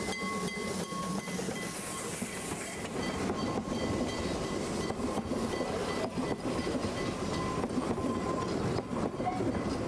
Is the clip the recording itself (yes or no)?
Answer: yes